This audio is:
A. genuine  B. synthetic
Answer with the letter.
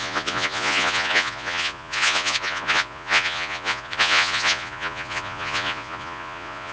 B